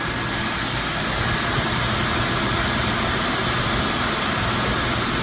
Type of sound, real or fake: real